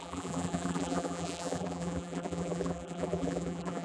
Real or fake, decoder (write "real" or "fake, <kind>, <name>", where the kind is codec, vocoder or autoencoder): fake, vocoder, BigVGAN v2